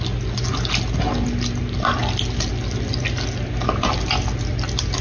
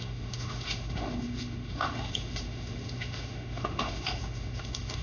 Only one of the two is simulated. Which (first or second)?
second